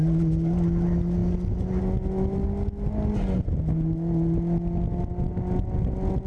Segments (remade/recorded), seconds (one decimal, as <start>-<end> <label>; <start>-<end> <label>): 0.0-6.3 recorded

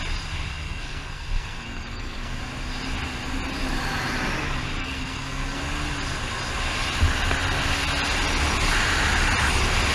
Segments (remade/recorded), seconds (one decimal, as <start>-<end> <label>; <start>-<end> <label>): 0.0-0.5 recorded; 0.5-2.4 remade; 2.4-4.8 recorded; 4.8-5.6 remade; 5.6-9.9 recorded

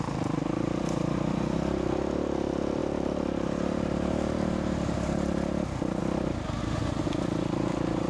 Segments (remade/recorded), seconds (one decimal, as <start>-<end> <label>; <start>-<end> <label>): 0.0-2.8 recorded; 2.8-6.0 remade; 6.0-8.1 recorded

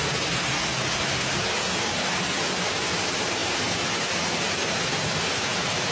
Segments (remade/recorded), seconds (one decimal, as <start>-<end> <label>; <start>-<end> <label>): 0.0-5.9 recorded

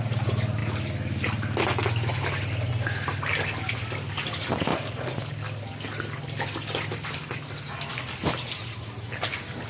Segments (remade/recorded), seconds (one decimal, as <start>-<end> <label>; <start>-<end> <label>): 0.0-9.7 recorded

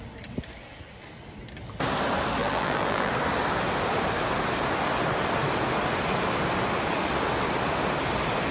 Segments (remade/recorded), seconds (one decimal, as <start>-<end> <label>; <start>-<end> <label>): 0.0-2.4 recorded; 2.4-3.1 remade; 3.1-8.5 recorded

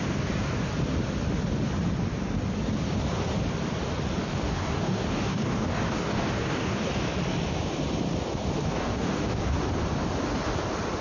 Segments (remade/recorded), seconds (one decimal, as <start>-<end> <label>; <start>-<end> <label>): 0.0-4.2 recorded; 4.2-6.9 remade; 6.9-8.6 recorded; 8.6-9.6 remade; 9.6-11.0 recorded